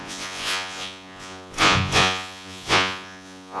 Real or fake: fake